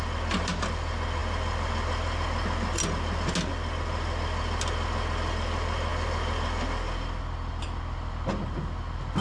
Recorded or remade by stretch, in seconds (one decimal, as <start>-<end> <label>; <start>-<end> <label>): 0.0-9.2 recorded